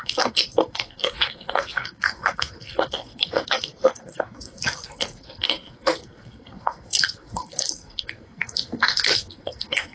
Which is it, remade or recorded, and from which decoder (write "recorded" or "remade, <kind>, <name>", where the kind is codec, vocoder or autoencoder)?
remade, codec, SNAC